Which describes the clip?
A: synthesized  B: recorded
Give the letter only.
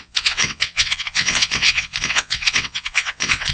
A